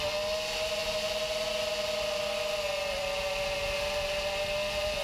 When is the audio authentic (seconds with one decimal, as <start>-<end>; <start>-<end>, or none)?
0.0-5.0